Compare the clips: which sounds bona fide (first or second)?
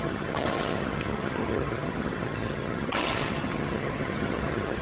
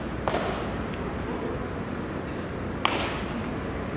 second